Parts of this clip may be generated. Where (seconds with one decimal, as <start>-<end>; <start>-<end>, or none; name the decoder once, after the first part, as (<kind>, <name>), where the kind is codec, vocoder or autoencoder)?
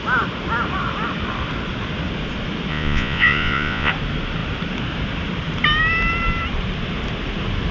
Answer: 2.7-3.9 (vocoder, Vocos)